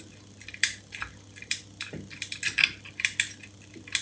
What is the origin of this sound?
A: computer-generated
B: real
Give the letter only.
B